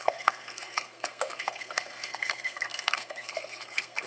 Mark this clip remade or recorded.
remade